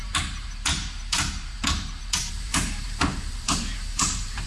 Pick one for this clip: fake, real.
fake